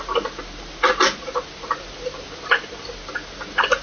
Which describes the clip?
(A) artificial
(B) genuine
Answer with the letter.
B